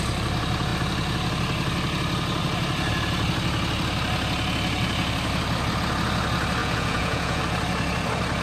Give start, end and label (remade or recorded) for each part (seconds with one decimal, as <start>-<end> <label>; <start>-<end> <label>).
0.0-6.6 recorded; 6.6-7.4 remade; 7.4-8.4 recorded